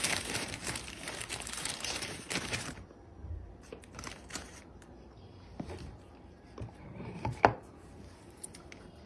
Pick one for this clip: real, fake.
fake